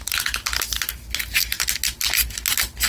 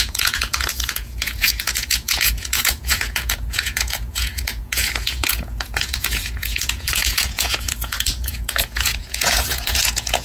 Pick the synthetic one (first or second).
second